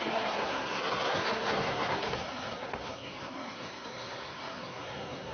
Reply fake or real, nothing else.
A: fake